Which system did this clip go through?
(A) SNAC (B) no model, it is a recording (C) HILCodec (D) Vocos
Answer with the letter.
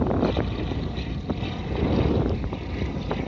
B